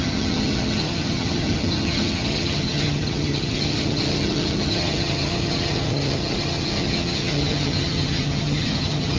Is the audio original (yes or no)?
no